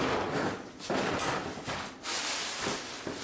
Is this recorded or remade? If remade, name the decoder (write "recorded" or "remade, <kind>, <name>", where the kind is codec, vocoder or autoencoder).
recorded